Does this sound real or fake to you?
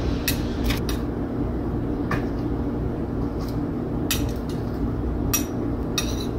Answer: real